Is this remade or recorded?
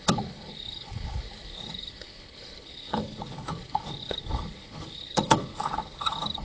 remade